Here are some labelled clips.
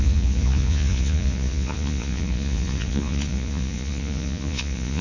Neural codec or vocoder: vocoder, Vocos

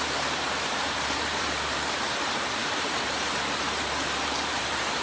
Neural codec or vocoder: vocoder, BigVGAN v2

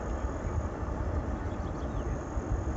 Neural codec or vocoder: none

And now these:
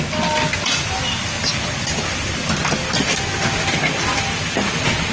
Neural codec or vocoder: none